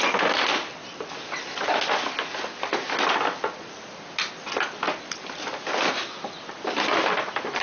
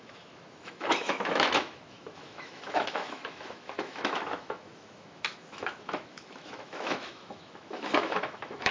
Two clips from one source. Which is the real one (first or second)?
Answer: first